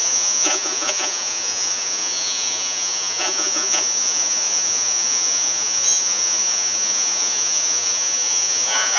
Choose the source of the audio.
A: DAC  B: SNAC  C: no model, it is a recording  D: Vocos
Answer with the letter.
D